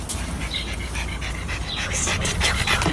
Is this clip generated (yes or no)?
no